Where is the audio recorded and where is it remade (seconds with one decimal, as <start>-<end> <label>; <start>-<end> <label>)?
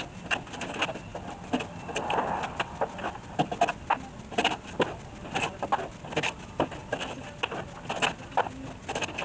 0.0-9.2 recorded